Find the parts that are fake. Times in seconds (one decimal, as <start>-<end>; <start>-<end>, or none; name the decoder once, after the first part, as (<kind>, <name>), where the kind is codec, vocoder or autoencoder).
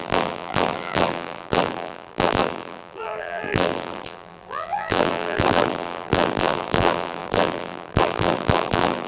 0.0-9.1 (vocoder, BigVGAN v2)